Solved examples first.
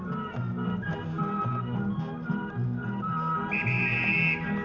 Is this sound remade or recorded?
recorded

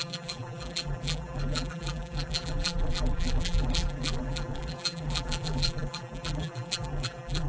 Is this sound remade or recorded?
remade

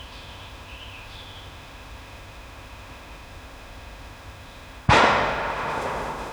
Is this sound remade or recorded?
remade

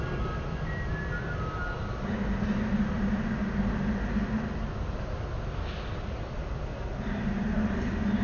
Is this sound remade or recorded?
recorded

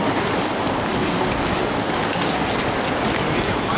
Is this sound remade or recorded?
recorded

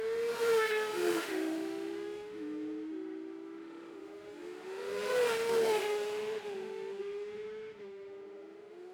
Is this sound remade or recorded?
remade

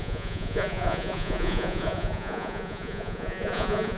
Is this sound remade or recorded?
remade